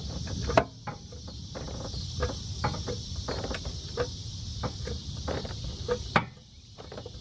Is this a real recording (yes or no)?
no